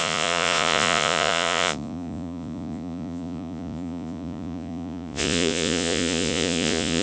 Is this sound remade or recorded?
remade